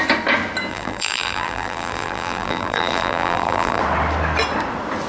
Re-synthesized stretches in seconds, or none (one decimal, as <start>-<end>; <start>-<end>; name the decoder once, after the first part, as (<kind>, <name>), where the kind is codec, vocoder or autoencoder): 0.7-3.8 (vocoder, BigVGAN v2)

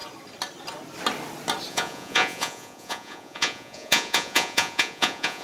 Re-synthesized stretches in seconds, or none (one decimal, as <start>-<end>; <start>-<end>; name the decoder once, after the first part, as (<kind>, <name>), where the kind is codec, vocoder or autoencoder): 1.7-5.4 (vocoder, Vocos)

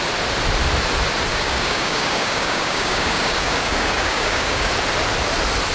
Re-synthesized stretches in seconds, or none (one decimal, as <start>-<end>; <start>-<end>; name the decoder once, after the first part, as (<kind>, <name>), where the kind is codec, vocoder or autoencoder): 1.3-4.7 (codec, DAC)

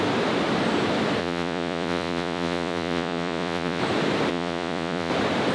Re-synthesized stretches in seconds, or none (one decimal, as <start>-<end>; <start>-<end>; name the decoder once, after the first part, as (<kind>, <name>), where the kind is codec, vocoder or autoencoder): 1.2-3.8 (vocoder, Vocos); 4.3-5.1